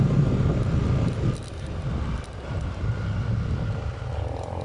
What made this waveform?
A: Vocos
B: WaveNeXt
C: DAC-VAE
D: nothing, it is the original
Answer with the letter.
D